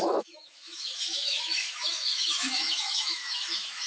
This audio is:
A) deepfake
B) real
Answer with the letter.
A